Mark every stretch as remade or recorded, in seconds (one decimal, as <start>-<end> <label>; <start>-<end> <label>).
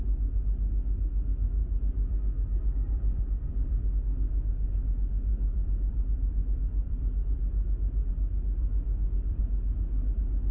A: 0.0-1.6 recorded; 1.6-3.9 remade; 3.9-5.3 recorded; 5.3-8.1 remade; 8.1-8.6 recorded; 8.6-9.4 remade; 9.4-10.5 recorded